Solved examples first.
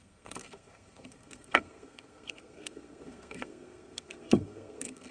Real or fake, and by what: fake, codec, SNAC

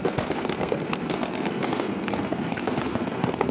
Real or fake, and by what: fake, codec, SNAC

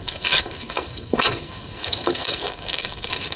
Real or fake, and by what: fake, codec, SNAC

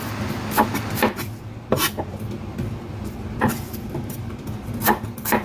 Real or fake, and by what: real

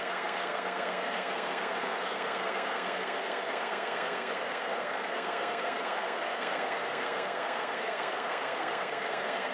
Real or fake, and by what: fake, codec, SNAC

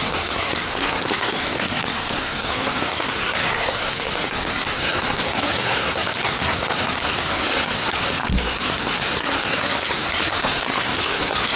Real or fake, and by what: fake, codec, SNAC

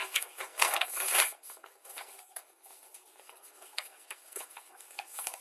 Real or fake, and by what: fake, codec, SNAC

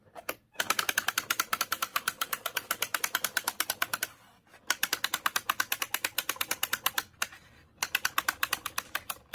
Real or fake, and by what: real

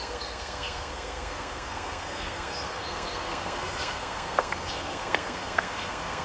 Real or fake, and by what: fake, codec, SNAC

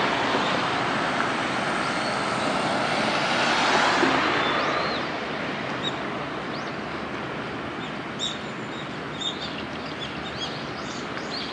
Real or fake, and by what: real